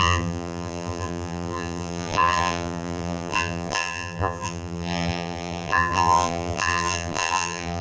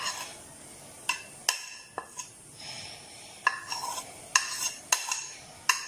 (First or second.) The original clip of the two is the second